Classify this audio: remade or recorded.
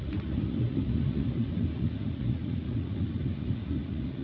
remade